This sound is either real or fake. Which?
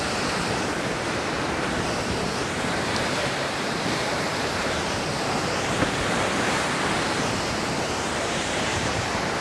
fake